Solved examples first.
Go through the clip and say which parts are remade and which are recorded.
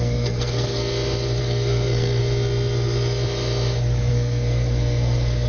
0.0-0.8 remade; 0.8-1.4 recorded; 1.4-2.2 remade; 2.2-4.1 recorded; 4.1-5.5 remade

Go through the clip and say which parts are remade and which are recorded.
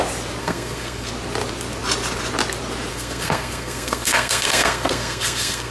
0.0-0.4 recorded; 0.4-1.1 remade; 1.1-2.9 recorded; 2.9-5.7 remade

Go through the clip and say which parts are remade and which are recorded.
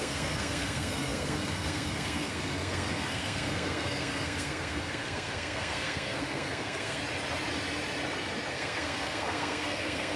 0.0-7.0 remade; 7.0-8.5 recorded; 8.5-10.2 remade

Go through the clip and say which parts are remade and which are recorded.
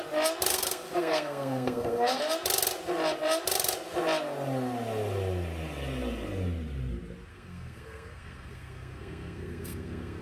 0.0-0.5 recorded; 0.5-2.2 remade; 2.2-7.3 recorded; 7.3-10.2 remade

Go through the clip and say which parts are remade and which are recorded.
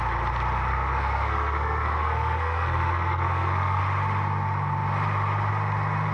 0.0-0.7 recorded; 0.7-3.8 remade; 3.8-6.1 recorded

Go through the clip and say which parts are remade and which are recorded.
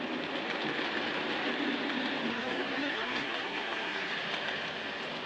0.0-2.3 recorded; 2.3-4.1 remade; 4.1-5.3 recorded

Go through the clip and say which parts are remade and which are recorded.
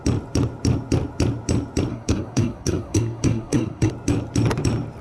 0.0-1.9 recorded; 1.9-3.9 remade; 3.9-5.0 recorded